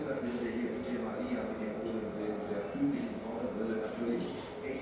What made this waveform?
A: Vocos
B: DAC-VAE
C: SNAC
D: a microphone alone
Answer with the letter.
D